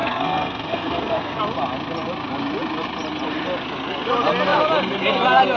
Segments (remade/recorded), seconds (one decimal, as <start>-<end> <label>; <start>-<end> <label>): 0.0-1.4 remade; 1.4-5.6 recorded